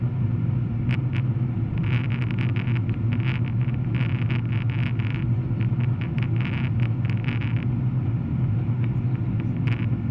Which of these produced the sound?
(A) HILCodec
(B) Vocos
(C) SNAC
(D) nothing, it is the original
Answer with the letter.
D